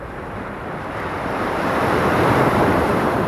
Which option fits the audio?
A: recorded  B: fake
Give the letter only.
B